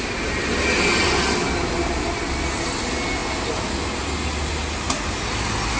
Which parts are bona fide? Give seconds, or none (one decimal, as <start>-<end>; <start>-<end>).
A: 0.0-5.8